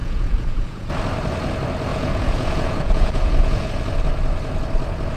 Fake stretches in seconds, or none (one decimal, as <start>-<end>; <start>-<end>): 0.0-0.9; 1.9-3.7